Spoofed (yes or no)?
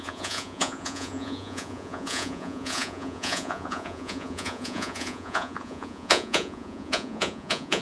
yes